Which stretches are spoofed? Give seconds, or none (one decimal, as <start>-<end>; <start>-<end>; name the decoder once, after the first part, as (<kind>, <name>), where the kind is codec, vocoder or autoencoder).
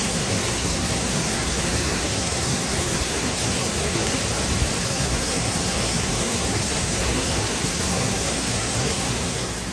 0.0-4.2 (codec, SNAC); 4.8-9.7